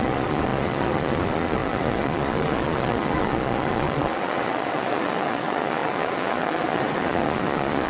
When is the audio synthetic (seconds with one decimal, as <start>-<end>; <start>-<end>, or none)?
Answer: 0.0-7.9